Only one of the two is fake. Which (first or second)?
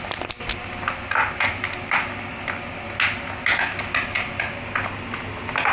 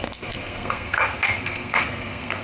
second